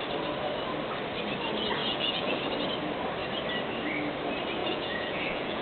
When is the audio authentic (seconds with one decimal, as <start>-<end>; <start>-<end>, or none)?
0.0-1.8; 2.4-4.6